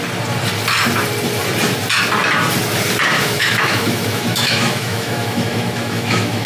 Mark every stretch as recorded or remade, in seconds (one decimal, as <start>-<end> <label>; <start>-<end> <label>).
0.0-3.1 recorded; 3.1-6.5 remade